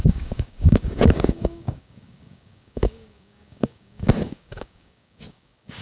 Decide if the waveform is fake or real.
fake